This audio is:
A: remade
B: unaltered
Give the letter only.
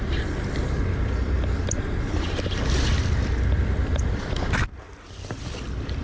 A